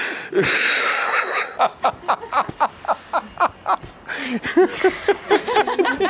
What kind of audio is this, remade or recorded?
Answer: recorded